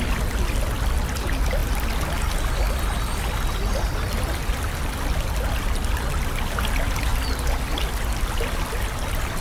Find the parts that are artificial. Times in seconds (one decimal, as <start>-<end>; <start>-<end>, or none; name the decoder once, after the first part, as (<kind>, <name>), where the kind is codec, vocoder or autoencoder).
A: none